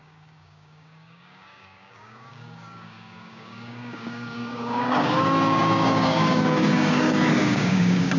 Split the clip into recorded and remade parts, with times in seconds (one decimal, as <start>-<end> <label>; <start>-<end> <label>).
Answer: 0.0-8.2 remade